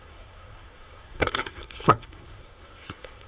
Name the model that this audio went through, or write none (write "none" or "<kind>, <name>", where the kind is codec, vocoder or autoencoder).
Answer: codec, SNAC